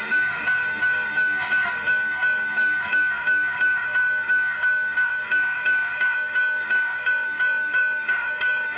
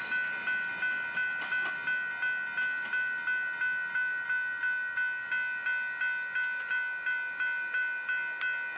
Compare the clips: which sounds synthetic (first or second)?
first